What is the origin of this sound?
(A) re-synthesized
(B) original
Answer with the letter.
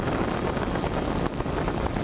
B